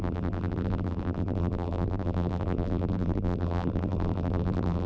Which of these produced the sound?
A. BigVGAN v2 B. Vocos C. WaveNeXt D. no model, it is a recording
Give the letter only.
A